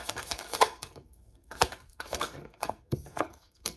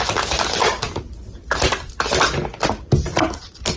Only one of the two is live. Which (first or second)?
second